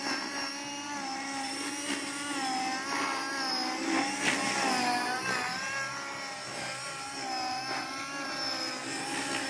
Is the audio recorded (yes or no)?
yes